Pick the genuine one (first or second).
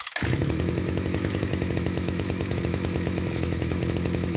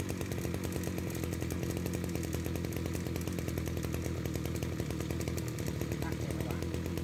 second